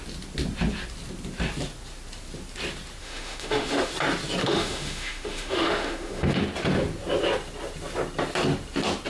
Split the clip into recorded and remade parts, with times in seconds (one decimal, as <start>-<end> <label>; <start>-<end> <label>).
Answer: 0.0-3.0 recorded; 3.0-3.9 remade; 3.9-4.4 recorded; 4.4-6.4 remade; 6.4-9.1 recorded